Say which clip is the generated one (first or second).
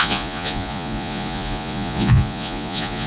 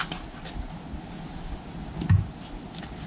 first